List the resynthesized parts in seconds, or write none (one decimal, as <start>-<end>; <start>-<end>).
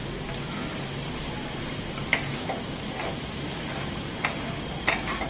none